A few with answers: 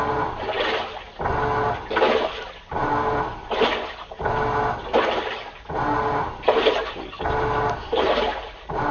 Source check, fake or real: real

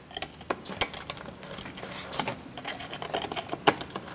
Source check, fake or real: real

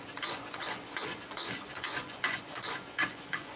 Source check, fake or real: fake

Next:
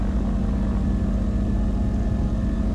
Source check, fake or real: real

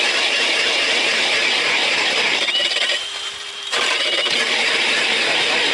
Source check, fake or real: fake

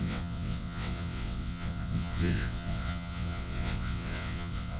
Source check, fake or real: fake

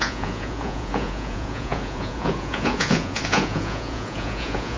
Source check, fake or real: fake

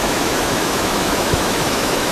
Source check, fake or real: fake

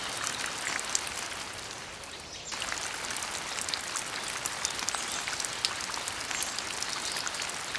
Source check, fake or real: real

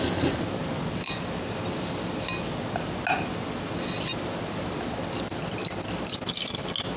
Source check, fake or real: real